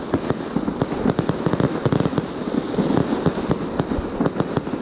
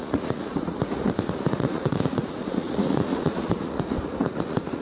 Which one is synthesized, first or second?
second